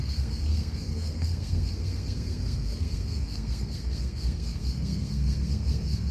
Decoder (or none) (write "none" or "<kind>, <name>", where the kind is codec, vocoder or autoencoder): codec, SNAC